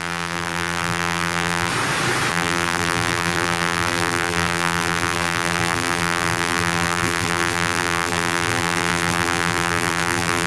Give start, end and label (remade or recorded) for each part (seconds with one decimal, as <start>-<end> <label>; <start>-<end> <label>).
0.0-1.7 remade; 1.7-2.3 recorded; 2.3-10.5 remade